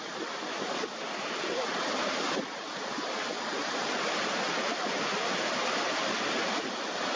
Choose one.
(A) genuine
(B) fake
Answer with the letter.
A